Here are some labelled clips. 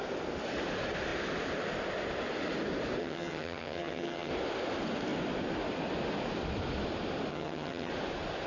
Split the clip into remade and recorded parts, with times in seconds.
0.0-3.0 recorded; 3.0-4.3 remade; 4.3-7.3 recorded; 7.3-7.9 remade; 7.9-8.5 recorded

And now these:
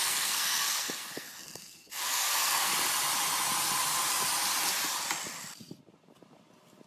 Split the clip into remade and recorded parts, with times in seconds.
0.0-2.7 remade; 2.7-6.9 recorded

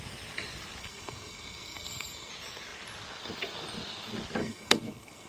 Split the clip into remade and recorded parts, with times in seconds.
0.0-0.8 recorded; 0.8-2.3 remade; 2.3-4.4 recorded; 4.4-5.3 remade